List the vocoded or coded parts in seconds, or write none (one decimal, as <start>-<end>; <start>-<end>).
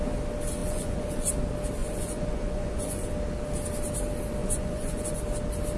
0.6-1.3; 1.8-3.1; 4.4-5.2